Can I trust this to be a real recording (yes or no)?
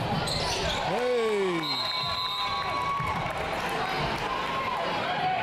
yes